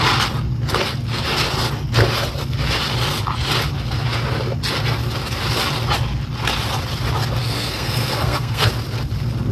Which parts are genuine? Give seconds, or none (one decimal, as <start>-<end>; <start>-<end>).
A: 0.0-7.4; 8.7-9.5